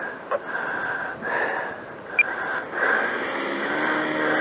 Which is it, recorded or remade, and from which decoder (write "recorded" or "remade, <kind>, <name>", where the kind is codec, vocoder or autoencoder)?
recorded